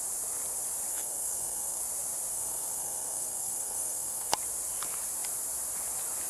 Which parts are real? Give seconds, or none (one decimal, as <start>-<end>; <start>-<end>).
0.0-0.9; 1.8-2.3; 4.3-6.3